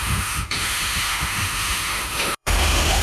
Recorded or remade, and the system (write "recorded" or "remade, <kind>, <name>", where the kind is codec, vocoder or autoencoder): remade, autoencoder, DAC-VAE